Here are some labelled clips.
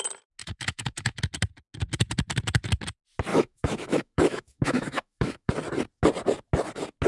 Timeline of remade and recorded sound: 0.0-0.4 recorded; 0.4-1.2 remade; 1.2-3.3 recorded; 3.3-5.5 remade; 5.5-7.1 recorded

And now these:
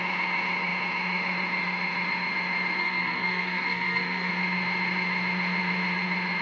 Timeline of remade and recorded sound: 0.0-2.8 recorded; 2.8-4.3 remade; 4.3-6.4 recorded

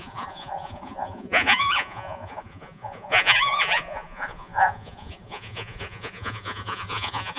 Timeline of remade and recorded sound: 0.0-7.4 remade

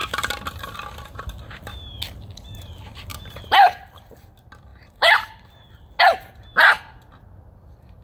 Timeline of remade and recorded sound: 0.0-3.1 recorded; 3.1-4.3 remade; 4.3-4.7 recorded; 4.7-5.5 remade; 5.5-8.0 recorded

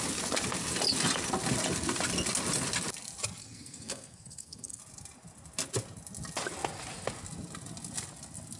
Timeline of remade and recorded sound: 0.0-3.4 recorded; 3.4-4.8 remade; 4.8-8.6 recorded

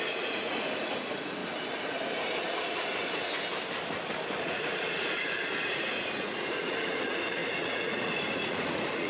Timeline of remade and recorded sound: 0.0-1.4 remade; 1.4-4.4 recorded; 4.4-9.1 remade

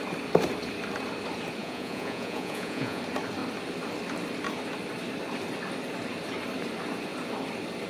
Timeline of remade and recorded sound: 0.0-1.6 recorded; 1.6-3.0 remade; 3.0-7.9 recorded

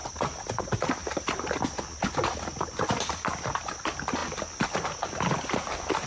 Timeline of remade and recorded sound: 0.0-6.1 recorded